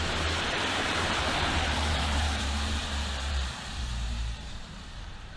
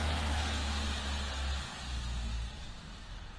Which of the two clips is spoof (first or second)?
first